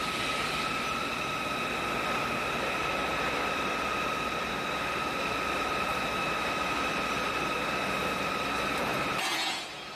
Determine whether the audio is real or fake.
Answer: real